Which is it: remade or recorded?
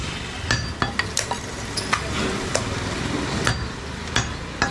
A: recorded